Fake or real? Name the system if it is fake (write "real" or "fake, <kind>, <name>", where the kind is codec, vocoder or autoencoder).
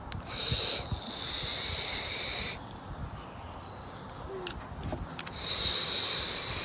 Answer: real